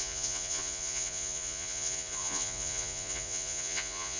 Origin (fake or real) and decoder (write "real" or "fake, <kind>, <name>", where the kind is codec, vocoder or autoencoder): fake, vocoder, Vocos